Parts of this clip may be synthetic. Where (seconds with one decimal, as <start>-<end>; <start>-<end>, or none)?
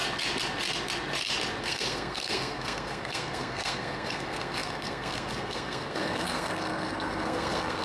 1.6-7.8